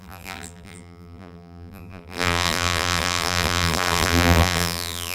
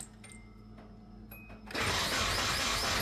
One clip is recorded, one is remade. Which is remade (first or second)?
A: first